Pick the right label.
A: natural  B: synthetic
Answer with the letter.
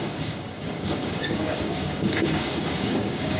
B